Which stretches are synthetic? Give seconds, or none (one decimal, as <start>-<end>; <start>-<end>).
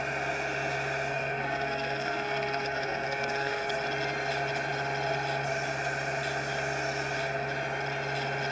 1.1-3.7